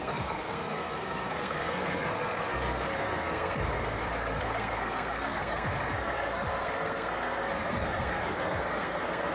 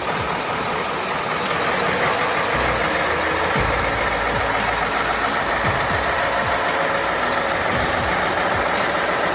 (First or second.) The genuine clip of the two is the second